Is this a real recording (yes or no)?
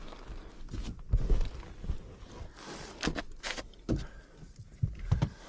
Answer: yes